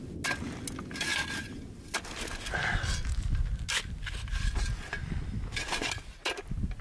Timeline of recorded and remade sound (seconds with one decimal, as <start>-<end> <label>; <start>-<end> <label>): 0.0-6.8 recorded